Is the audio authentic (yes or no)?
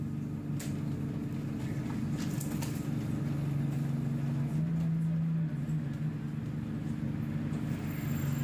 yes